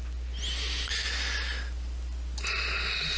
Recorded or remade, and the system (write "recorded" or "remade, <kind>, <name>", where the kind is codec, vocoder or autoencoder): recorded